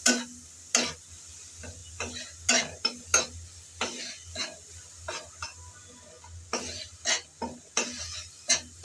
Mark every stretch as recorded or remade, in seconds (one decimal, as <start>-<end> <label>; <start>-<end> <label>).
0.0-8.8 recorded